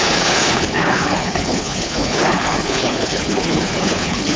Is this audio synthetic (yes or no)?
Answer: yes